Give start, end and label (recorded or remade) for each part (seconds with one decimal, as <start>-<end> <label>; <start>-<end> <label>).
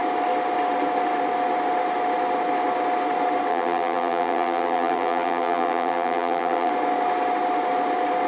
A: 0.0-3.5 recorded; 3.5-6.7 remade; 6.7-8.3 recorded